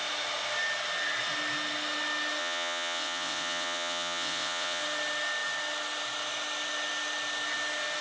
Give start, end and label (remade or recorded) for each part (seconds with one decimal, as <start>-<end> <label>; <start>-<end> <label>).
0.0-2.4 recorded; 2.4-4.8 remade; 4.8-8.0 recorded